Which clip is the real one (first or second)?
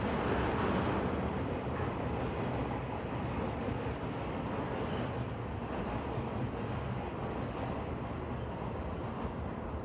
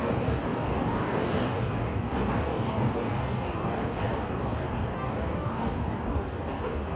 first